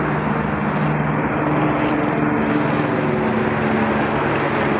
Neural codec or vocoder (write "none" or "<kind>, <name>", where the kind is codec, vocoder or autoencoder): none